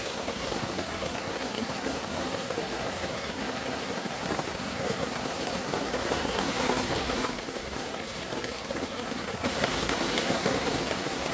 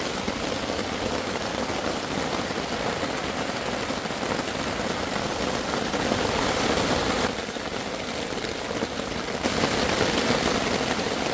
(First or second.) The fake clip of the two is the first